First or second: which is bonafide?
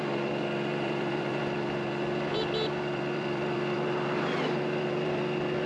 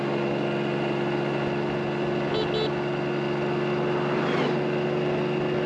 second